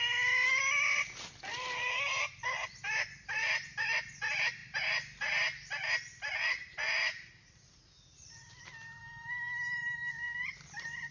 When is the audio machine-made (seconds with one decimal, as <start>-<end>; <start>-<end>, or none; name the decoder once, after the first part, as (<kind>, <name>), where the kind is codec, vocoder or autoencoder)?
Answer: 9.0-10.1 (autoencoder, DAC-VAE)